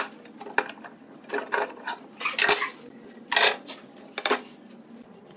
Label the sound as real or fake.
real